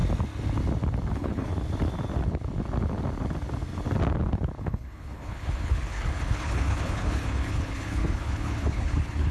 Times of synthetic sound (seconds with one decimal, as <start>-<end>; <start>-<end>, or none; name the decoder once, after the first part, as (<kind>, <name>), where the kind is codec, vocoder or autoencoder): 1.1-1.5 (codec, HILCodec); 4.6-9.3